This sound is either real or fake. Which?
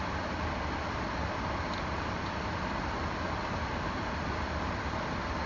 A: real